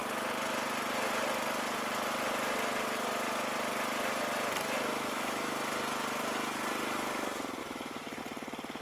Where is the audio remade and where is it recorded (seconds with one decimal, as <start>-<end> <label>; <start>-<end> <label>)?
0.0-4.9 recorded; 4.9-5.5 remade; 5.5-7.6 recorded; 7.6-8.2 remade; 8.2-8.8 recorded